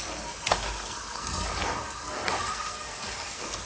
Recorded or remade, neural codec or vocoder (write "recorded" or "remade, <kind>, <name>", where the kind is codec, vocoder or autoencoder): remade, codec, SNAC